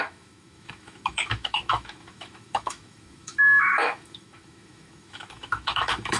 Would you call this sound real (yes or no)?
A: no